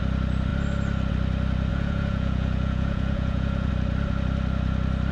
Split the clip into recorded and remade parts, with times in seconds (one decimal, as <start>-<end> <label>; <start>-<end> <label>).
0.0-1.7 recorded; 1.7-3.7 remade; 3.7-5.1 recorded